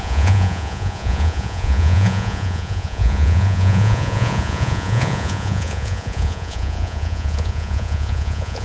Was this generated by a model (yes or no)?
yes